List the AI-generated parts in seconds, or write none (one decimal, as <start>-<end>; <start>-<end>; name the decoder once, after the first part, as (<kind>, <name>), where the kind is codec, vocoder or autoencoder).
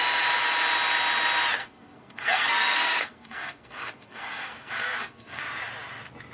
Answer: 1.6-5.4 (codec, SNAC)